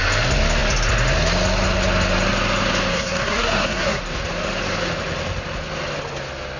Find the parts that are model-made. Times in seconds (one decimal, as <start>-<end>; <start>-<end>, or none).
2.9-4.0